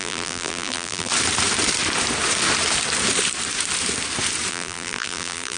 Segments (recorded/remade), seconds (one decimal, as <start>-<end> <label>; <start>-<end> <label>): 0.0-1.1 remade; 1.1-4.5 recorded; 4.5-5.6 remade